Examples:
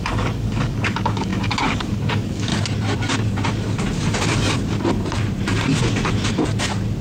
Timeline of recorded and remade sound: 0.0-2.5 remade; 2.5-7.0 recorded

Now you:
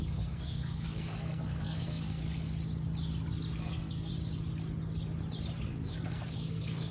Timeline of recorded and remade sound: 0.0-2.2 remade; 2.2-3.6 recorded; 3.6-4.1 remade; 4.1-5.7 recorded; 5.7-6.9 remade